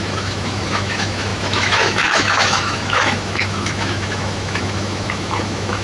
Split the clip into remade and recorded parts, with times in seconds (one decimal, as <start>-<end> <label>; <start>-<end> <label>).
0.0-5.8 remade